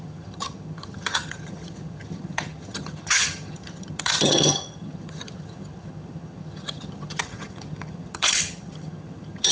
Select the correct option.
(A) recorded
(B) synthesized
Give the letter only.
B